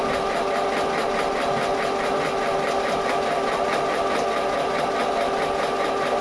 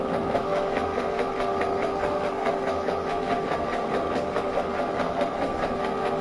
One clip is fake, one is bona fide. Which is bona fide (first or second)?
first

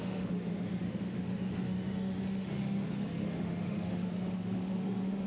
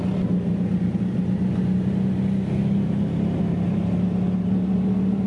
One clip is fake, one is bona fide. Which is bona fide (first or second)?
second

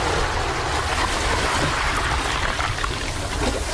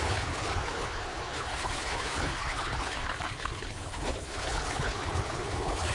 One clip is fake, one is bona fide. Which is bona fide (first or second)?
first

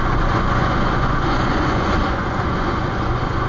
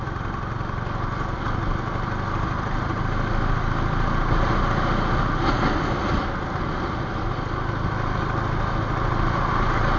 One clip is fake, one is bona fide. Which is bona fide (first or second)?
second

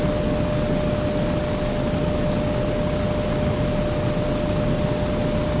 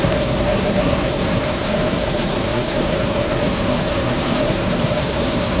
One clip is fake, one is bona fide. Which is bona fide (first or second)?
first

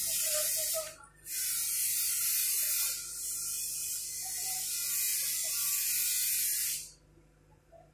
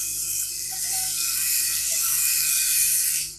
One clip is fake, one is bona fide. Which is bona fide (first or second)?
first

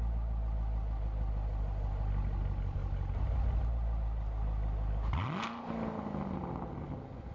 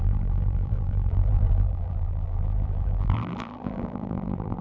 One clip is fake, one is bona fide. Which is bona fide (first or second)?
first